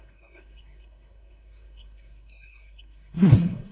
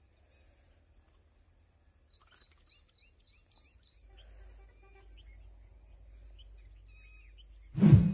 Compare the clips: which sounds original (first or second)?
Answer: second